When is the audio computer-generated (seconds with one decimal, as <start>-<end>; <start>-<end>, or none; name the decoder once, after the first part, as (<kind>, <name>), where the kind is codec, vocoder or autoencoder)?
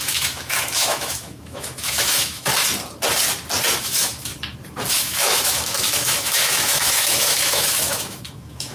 0.0-2.5 (autoencoder, DAC-VAE); 3.8-4.3; 4.9-8.7